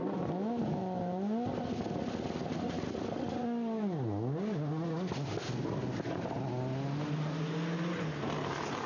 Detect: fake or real real